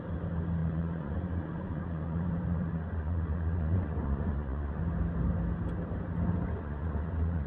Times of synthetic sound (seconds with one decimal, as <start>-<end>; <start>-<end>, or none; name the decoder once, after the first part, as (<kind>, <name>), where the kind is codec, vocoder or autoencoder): 0.6-4.8 (vocoder, Vocos); 6.5-7.5